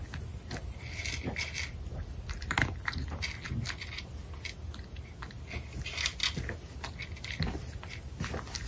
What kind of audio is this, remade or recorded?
recorded